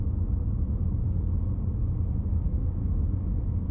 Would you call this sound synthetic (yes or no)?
no